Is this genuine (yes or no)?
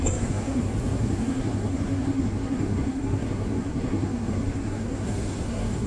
no